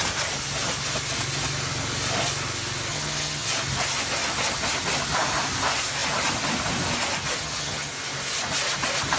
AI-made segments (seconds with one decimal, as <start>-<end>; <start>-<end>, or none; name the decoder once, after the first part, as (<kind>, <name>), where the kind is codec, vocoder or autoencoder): 2.9-3.5 (vocoder, HiFi-GAN); 7.4-7.9